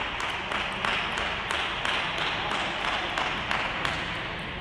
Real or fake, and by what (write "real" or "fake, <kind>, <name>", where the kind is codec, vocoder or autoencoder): real